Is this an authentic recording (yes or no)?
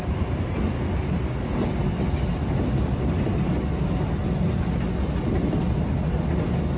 yes